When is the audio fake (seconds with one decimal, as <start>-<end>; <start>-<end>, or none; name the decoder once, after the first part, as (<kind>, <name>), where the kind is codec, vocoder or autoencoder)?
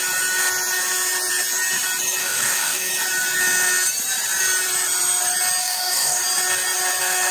2.2-2.9 (codec, DAC); 5.6-6.2